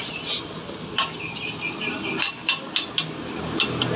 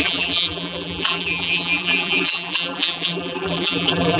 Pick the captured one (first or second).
first